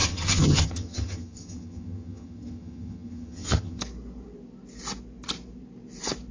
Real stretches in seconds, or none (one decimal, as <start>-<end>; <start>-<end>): 3.8-6.3